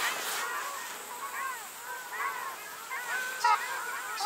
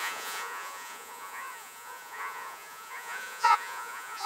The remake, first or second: second